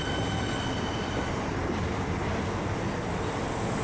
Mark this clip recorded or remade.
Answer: recorded